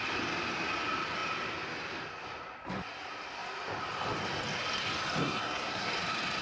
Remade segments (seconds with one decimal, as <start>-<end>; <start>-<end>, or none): 5.2-5.9